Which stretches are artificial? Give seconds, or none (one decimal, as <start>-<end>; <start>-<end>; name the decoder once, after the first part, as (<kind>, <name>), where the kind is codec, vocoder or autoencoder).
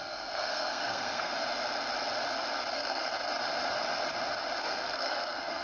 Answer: 0.0-1.3 (codec, SNAC); 2.7-3.1; 4.6-5.6